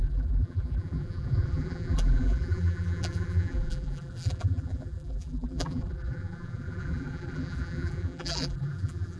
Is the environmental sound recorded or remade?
remade